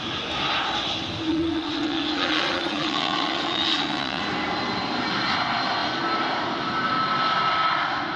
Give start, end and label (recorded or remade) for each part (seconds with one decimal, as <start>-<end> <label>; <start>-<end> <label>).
0.0-1.3 recorded; 1.3-4.2 remade; 4.2-8.2 recorded